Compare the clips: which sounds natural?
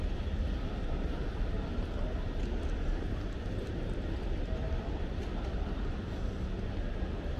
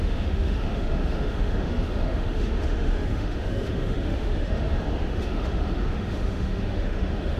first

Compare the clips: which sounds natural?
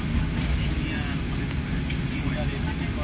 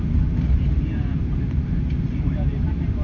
first